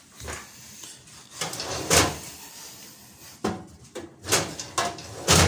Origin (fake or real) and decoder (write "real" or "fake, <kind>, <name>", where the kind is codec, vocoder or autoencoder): real